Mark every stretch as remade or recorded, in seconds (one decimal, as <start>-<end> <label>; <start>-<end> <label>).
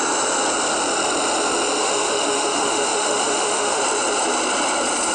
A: 0.0-1.8 recorded; 1.8-3.8 remade; 3.8-5.1 recorded